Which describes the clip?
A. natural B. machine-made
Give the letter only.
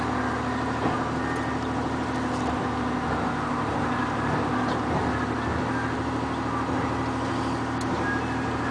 A